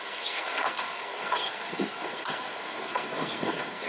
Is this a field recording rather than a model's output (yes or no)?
no